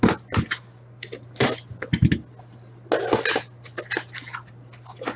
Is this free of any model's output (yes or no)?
yes